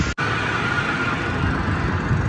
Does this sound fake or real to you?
real